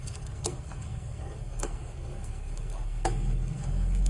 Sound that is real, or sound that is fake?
fake